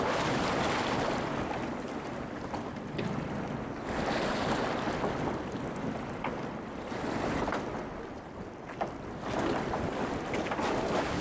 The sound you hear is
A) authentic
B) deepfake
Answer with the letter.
A